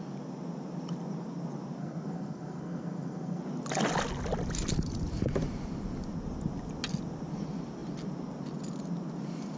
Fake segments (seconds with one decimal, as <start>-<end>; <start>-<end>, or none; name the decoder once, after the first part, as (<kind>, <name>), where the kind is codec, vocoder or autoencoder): 1.8-3.4 (codec, SNAC)